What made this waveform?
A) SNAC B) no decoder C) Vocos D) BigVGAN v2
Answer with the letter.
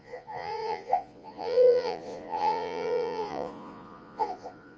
C